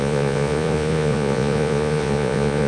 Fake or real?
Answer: fake